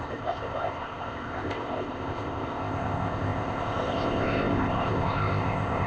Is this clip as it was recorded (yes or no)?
no